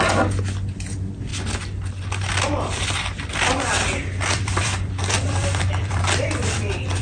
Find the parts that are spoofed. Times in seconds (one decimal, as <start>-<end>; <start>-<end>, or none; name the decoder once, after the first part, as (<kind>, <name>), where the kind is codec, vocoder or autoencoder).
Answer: 4.0-7.0 (vocoder, BigVGAN v2)